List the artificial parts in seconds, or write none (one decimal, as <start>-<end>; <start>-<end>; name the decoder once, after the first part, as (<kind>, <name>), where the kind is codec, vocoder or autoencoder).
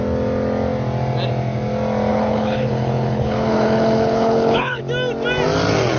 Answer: 2.1-4.8 (codec, HILCodec)